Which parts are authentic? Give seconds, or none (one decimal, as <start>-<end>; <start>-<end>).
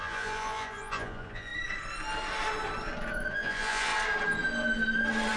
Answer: 1.5-3.3; 3.9-5.4